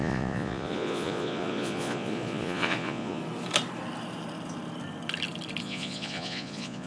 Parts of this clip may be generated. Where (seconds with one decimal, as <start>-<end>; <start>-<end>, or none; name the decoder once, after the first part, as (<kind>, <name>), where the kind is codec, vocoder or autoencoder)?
0.0-3.2 (vocoder, Vocos); 5.6-6.9